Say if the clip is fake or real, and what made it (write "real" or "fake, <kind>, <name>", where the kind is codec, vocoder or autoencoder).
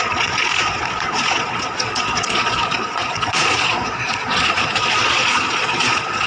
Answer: fake, vocoder, Vocos